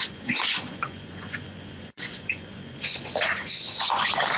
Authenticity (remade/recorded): remade